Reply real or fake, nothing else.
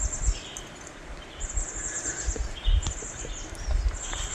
fake